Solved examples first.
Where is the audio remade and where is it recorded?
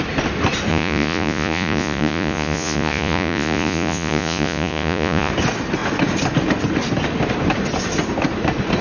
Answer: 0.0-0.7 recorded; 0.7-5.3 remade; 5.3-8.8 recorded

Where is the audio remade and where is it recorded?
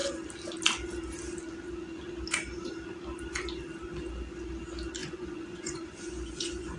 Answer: 0.0-5.0 recorded; 5.0-6.8 remade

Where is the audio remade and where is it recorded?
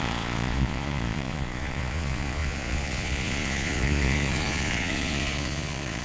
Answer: 0.0-6.0 remade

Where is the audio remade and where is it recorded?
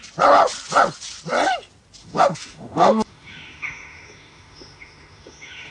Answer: 0.0-2.0 recorded; 2.0-5.7 remade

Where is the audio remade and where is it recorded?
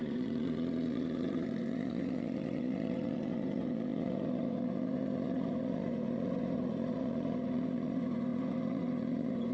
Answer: 0.0-9.5 remade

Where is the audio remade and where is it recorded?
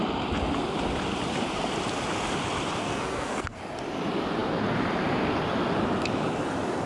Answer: 0.0-2.8 recorded; 2.8-3.6 remade; 3.6-6.9 recorded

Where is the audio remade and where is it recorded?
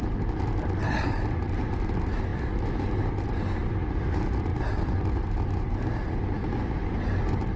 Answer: 0.0-2.3 recorded; 2.3-3.3 remade; 3.3-7.6 recorded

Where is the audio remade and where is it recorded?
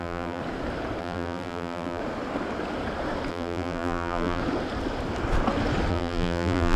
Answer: 0.0-0.4 remade; 0.4-1.0 recorded; 1.0-2.0 remade; 2.0-3.3 recorded; 3.3-4.4 remade; 4.4-5.9 recorded; 5.9-6.8 remade